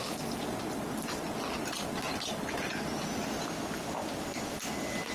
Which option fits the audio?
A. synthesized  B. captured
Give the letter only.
B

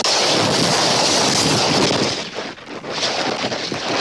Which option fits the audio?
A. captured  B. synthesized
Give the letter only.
A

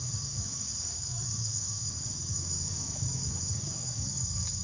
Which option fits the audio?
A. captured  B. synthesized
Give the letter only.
B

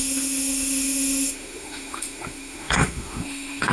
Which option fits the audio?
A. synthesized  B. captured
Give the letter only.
A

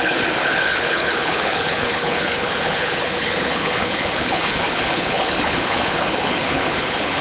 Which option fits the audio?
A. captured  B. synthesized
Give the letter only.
B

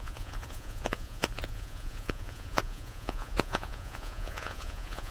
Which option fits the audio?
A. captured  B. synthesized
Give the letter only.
B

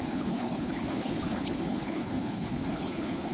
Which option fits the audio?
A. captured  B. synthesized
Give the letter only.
B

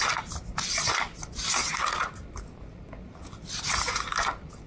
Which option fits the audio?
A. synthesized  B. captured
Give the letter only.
B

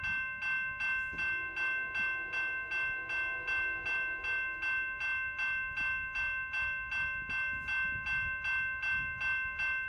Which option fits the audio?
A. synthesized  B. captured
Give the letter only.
B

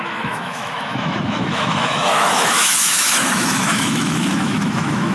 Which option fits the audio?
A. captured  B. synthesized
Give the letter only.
B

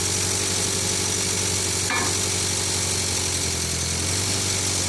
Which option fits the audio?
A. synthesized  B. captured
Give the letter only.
B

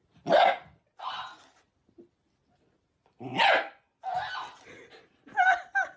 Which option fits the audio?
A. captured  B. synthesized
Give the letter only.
A